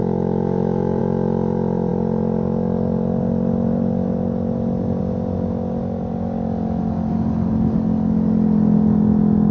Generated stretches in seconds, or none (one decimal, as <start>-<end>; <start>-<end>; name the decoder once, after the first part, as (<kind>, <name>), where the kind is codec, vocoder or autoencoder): 0.0-1.0 (autoencoder, DAC-VAE)